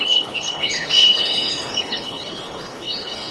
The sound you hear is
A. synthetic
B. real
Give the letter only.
A